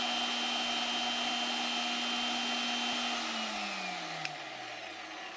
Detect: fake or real real